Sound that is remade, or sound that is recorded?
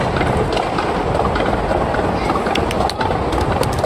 recorded